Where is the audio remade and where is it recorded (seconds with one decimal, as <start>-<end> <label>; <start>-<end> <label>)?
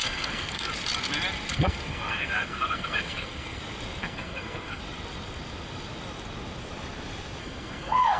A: 0.0-0.7 remade; 0.7-1.5 recorded; 1.5-3.6 remade; 3.6-4.0 recorded; 4.0-4.8 remade; 4.8-7.4 recorded; 7.4-8.2 remade